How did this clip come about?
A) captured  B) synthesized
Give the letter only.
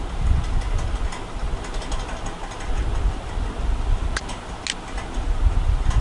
A